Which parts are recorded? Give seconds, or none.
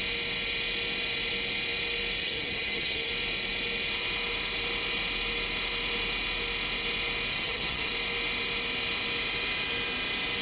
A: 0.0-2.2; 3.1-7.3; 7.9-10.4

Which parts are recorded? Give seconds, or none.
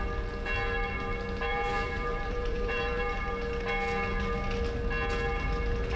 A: 0.0-1.5; 3.3-6.0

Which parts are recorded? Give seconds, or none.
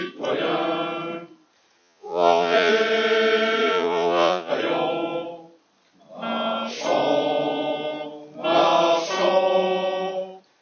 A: 0.0-1.8; 2.7-3.6; 4.5-10.6